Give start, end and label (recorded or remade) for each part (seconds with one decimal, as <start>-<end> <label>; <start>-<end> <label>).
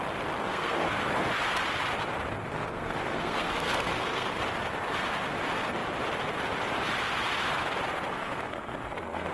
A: 0.0-0.4 recorded; 0.4-1.0 remade; 1.0-2.5 recorded; 2.5-4.4 remade; 4.4-8.1 recorded; 8.1-9.3 remade